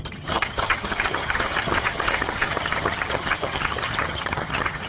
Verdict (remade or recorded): remade